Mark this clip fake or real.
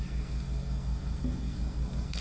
fake